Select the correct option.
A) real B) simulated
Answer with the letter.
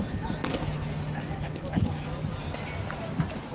A